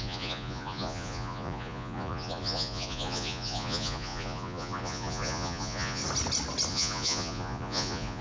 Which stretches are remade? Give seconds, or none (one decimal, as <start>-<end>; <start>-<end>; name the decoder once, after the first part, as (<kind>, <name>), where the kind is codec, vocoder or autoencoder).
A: 0.0-6.0 (vocoder, Vocos); 6.7-8.2